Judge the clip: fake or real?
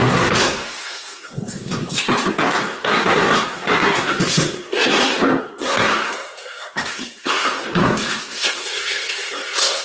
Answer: fake